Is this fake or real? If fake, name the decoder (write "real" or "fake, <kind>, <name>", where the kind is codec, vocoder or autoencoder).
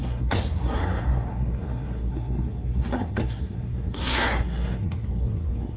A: fake, codec, SNAC